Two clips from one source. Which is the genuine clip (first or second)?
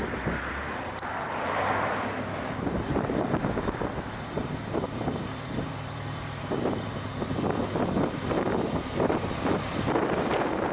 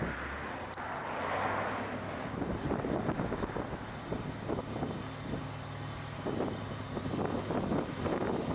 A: second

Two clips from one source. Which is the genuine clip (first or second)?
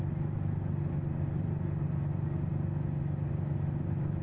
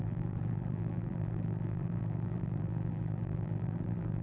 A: first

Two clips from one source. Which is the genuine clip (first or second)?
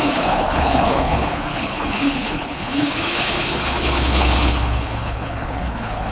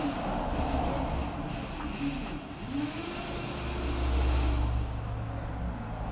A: second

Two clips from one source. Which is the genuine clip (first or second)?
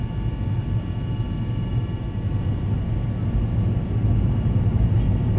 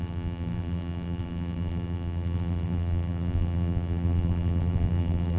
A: first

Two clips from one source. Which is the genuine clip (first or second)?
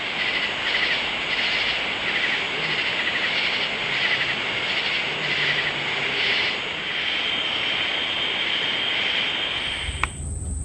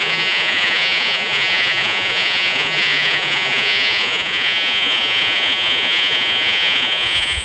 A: first